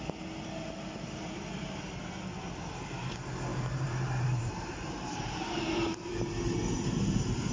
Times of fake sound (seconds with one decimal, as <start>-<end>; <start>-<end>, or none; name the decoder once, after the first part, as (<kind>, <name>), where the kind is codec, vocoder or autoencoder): 3.5-6.1 (vocoder, BigVGAN v2)